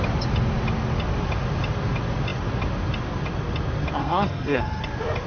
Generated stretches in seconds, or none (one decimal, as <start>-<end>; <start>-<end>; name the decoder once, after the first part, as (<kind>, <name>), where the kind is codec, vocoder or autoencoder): 4.0-4.8 (codec, SNAC)

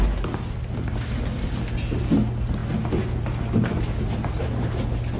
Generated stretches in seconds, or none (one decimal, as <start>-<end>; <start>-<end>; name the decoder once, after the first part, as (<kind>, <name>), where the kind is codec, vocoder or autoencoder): none

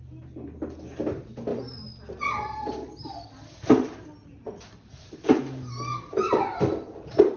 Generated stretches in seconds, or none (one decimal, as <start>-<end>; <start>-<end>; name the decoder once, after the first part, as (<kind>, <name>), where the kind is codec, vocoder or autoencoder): none

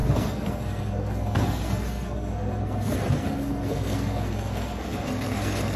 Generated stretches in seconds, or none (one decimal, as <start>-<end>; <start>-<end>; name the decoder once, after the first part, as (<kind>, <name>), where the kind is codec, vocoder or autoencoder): 0.0-5.8 (codec, SNAC)

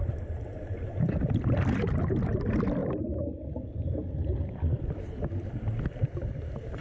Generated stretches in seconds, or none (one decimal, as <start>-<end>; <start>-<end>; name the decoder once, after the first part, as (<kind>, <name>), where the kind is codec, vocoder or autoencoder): 0.0-2.8 (vocoder, BigVGAN v2); 3.5-6.8

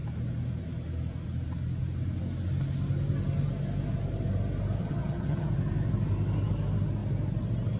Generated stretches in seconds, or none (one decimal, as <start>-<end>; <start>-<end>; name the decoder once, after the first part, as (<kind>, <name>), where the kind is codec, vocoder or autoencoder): 4.8-5.5 (vocoder, HiFi-GAN)

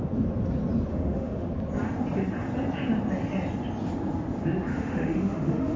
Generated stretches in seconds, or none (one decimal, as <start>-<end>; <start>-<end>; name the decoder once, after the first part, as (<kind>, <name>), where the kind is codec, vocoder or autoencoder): 0.9-1.5 (autoencoder, DAC-VAE); 4.7-5.8

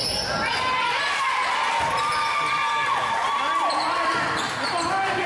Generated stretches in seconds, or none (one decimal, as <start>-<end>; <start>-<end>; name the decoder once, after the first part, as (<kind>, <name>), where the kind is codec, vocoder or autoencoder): 0.0-3.2 (vocoder, BigVGAN v2); 3.7-5.3